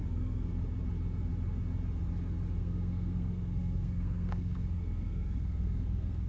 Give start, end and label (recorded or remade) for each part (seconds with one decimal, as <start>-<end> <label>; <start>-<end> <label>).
0.0-0.5 remade; 0.5-2.6 recorded; 2.6-6.3 remade